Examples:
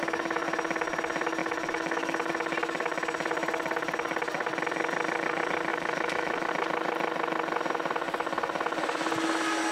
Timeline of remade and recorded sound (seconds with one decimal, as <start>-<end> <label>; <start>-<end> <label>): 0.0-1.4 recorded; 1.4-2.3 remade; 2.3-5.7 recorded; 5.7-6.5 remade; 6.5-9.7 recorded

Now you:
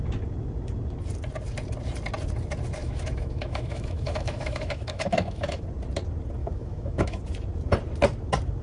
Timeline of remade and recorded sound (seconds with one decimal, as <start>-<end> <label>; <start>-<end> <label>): 0.0-2.8 recorded; 2.8-5.6 remade; 5.6-6.4 recorded; 6.4-7.2 remade; 7.2-8.6 recorded

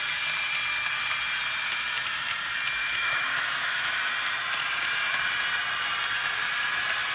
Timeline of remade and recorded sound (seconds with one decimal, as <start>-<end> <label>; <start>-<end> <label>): 0.0-2.8 recorded; 2.8-3.9 remade; 3.9-7.1 recorded